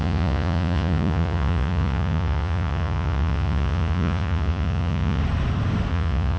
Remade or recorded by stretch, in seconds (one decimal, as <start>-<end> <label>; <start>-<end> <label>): 0.0-5.2 remade; 5.2-5.9 recorded; 5.9-6.4 remade